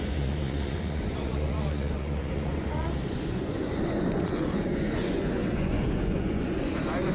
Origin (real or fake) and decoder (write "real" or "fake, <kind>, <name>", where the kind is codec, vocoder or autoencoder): fake, vocoder, Vocos